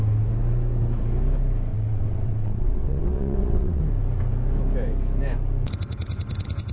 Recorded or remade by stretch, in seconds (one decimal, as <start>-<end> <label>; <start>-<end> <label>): 0.0-1.7 recorded; 1.7-3.8 remade; 3.8-6.7 recorded